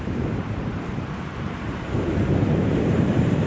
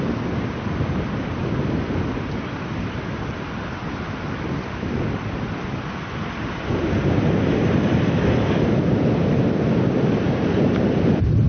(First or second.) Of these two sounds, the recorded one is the second